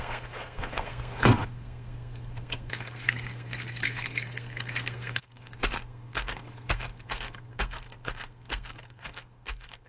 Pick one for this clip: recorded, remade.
remade